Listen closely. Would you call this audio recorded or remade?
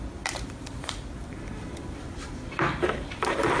remade